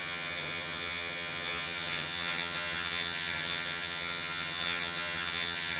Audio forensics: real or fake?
fake